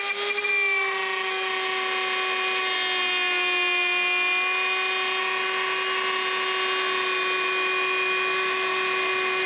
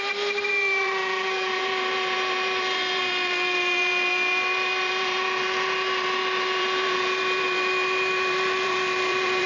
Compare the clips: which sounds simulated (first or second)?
second